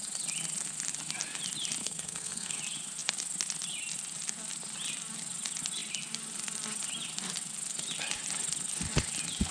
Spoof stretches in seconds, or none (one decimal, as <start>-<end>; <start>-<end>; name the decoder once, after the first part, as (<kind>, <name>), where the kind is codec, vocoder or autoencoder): 1.8-2.6 (codec, SNAC)